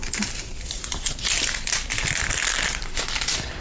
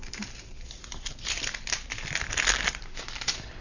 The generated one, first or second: first